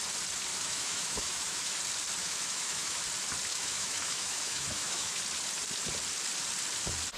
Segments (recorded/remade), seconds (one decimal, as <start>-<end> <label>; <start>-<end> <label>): 0.0-0.5 recorded; 0.5-1.8 remade; 1.8-2.2 recorded; 2.2-3.0 remade; 3.0-3.5 recorded; 3.5-5.2 remade; 5.2-7.2 recorded